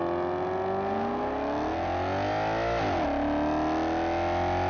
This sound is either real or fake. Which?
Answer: real